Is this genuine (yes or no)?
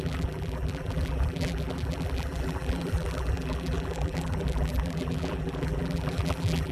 no